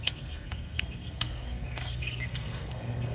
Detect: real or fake fake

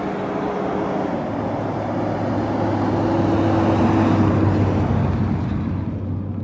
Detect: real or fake real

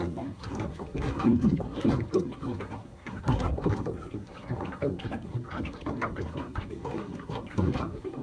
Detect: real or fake fake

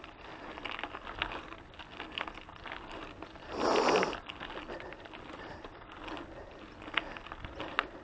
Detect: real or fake real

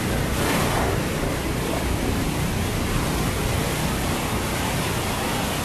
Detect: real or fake real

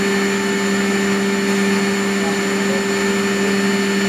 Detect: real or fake real